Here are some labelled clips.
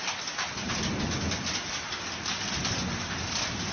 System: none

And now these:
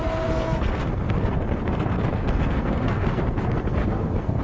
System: codec, SNAC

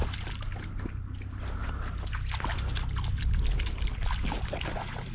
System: none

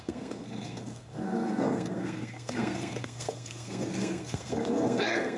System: codec, SNAC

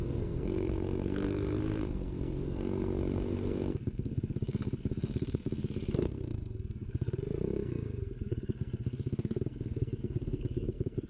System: codec, SNAC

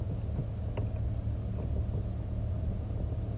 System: none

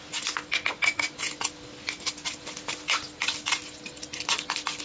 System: none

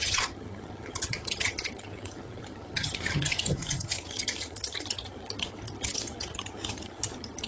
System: vocoder, HiFi-GAN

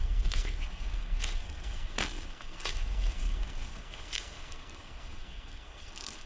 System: codec, SNAC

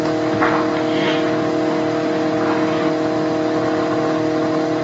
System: none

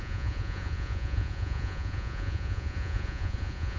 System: vocoder, Vocos